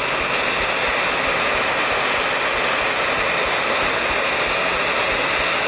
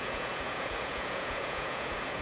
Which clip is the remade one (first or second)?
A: second